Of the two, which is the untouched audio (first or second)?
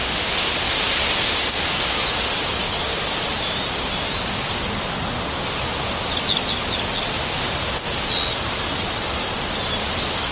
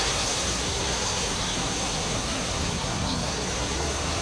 first